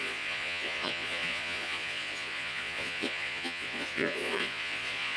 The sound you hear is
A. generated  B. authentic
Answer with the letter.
A